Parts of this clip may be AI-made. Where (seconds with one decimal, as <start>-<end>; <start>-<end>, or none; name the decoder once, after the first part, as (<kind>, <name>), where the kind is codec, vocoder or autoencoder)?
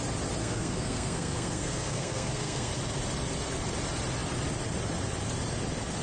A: 0.4-2.7 (codec, SNAC)